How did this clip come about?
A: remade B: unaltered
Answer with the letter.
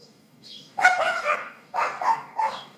A